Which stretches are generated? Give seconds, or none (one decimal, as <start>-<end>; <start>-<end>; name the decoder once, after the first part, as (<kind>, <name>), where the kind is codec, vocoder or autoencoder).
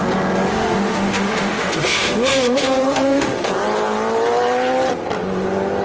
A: 0.5-3.5 (autoencoder, DAC-VAE)